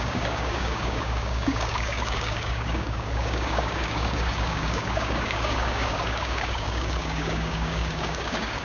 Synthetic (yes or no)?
yes